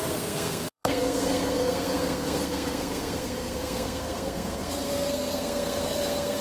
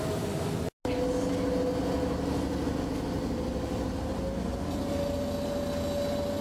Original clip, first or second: second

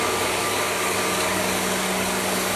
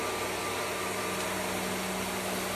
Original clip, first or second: second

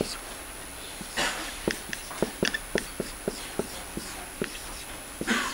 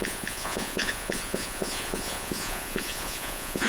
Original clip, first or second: first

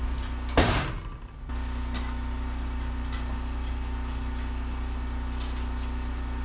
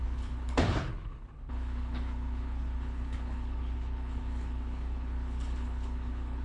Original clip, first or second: first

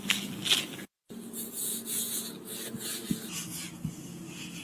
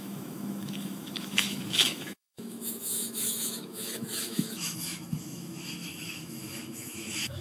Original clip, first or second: first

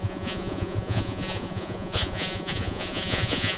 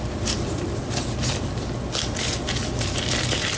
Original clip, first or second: second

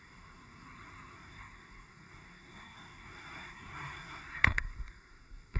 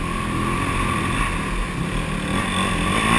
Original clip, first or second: second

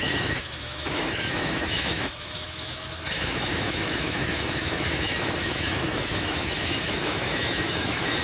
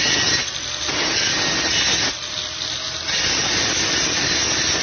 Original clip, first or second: second